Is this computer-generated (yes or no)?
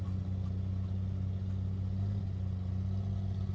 no